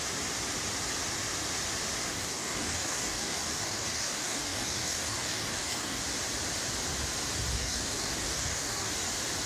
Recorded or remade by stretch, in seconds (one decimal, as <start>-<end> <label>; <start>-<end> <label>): 0.0-2.1 recorded; 2.1-6.0 remade; 6.0-7.5 recorded; 7.5-8.9 remade; 8.9-9.5 recorded